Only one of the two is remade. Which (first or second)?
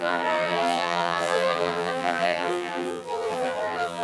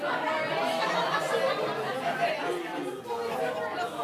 first